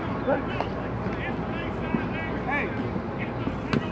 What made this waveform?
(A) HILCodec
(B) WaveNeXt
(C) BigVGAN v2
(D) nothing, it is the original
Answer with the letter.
D